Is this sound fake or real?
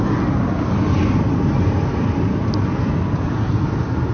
real